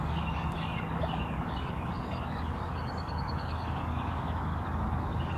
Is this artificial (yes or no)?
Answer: yes